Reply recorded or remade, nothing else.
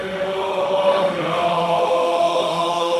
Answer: remade